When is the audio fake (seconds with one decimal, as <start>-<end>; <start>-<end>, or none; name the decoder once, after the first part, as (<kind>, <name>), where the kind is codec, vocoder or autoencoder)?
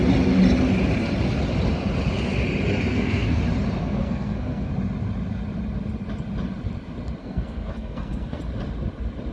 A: 2.9-3.4 (codec, SNAC); 3.8-4.7; 7.2-8.4